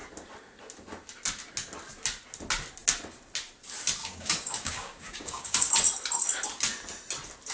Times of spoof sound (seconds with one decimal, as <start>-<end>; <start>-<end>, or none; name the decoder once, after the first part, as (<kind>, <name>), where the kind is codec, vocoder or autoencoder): 4.0-5.7 (codec, DAC)